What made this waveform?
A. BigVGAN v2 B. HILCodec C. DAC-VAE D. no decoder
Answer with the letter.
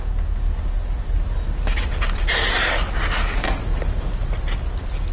D